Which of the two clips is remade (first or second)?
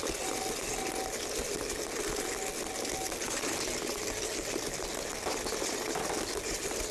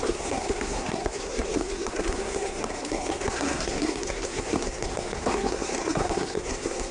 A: second